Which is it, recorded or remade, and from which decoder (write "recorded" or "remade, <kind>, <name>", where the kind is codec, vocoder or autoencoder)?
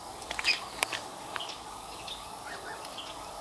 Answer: remade, codec, DAC